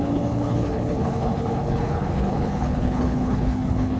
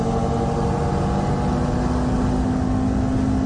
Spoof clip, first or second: first